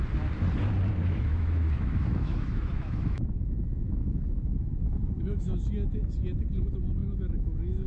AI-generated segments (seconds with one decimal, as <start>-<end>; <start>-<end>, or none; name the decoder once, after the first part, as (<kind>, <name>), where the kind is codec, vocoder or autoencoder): 1.0-5.7 (autoencoder, DAC-VAE); 7.0-7.9